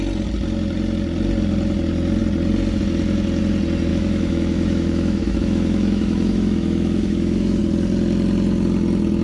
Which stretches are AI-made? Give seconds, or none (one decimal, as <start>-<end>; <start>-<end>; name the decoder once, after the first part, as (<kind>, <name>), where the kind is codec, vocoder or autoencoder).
3.9-7.6 (autoencoder, DAC-VAE)